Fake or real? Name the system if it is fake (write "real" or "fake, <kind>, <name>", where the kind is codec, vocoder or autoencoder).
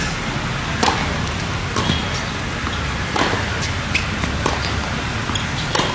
real